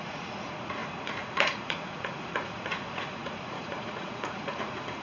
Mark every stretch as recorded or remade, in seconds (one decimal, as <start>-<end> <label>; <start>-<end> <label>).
0.0-5.0 remade